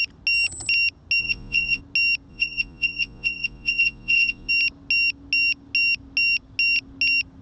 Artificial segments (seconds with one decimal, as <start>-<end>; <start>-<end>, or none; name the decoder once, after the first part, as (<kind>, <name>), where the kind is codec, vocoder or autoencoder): 1.2-1.8 (vocoder, Vocos); 2.3-4.5